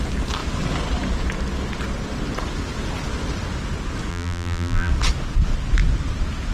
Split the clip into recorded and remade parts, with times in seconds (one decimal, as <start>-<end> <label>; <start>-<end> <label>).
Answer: 0.0-4.1 recorded; 4.1-4.9 remade; 4.9-6.5 recorded